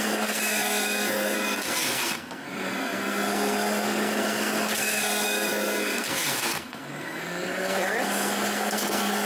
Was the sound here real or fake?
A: fake